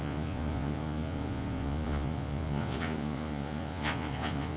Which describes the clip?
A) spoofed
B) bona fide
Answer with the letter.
A